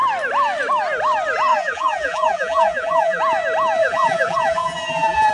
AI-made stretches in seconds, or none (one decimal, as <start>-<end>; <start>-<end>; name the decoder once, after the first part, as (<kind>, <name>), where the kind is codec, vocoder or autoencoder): 1.5-3.2 (vocoder, BigVGAN v2); 3.8-5.3

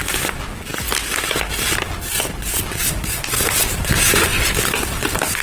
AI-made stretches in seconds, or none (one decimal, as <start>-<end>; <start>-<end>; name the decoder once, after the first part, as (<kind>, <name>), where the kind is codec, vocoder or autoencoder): 4.3-5.4 (vocoder, BigVGAN v2)